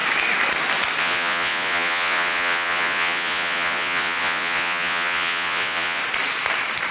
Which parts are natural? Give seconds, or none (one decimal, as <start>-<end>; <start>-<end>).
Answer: 0.0-1.0; 6.0-6.9